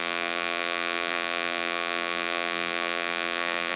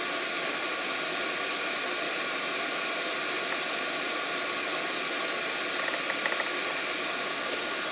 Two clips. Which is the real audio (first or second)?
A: second